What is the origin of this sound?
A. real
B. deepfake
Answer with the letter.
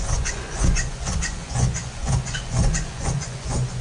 B